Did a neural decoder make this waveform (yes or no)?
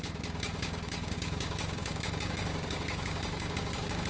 yes